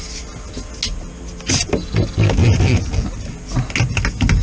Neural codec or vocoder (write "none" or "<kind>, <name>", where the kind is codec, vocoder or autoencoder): none